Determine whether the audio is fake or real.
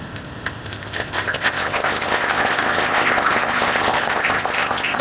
fake